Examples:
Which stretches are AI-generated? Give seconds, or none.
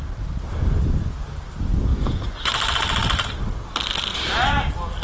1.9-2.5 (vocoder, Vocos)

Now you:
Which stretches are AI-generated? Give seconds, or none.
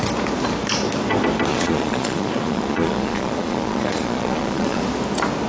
1.5-4.8 (vocoder, Vocos)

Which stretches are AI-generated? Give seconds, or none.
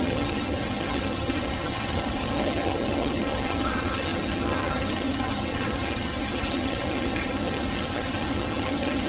0.0-9.1 (vocoder, HiFi-GAN)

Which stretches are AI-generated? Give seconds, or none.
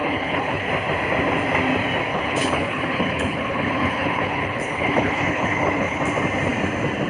0.0-0.7 (codec, HILCodec); 2.1-6.0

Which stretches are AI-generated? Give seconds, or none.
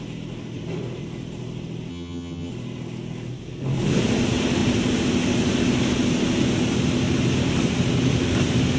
1.9-2.5 (vocoder, HiFi-GAN)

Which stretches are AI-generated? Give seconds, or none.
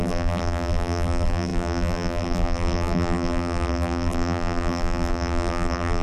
0.0-6.0 (vocoder, BigVGAN v2)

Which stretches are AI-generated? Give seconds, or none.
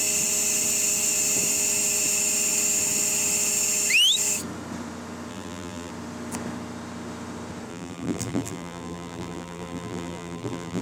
5.3-5.9 (vocoder, BigVGAN v2); 7.7-10.8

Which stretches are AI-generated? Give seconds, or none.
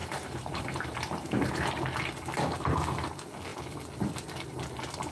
0.0-1.8 (vocoder, BigVGAN v2)